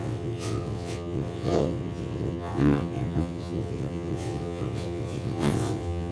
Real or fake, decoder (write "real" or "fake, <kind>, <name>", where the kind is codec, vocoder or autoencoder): fake, vocoder, WaveNeXt